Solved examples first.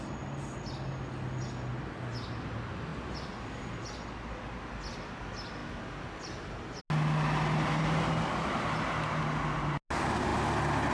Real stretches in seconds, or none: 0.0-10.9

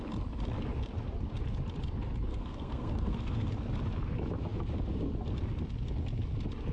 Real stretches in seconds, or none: 0.0-2.3; 3.5-6.7

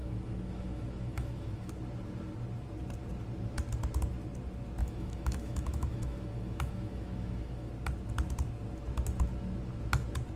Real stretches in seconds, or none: 1.7-4.8; 7.7-10.4

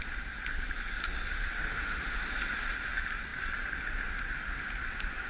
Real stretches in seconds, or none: 0.0-1.3; 2.2-5.3

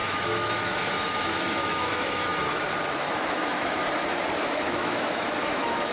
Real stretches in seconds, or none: 2.3-3.0; 3.8-4.4